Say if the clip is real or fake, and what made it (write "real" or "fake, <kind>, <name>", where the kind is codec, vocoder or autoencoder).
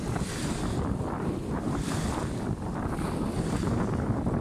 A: real